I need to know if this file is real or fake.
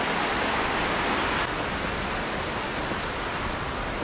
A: real